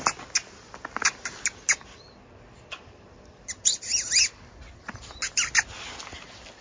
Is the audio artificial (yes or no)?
no